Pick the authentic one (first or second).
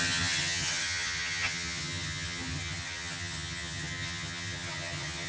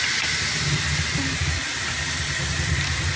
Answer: second